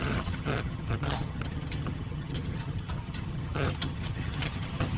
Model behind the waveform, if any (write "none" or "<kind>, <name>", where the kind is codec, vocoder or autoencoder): vocoder, HiFi-GAN